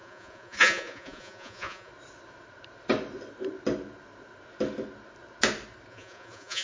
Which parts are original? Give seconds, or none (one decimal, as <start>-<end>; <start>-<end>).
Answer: 1.9-5.9